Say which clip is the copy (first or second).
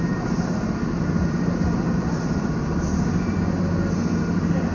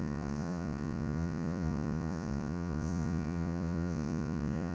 second